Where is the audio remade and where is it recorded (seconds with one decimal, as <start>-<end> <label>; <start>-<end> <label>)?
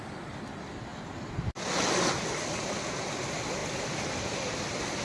0.0-5.0 recorded